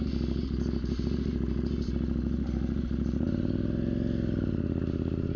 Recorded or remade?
recorded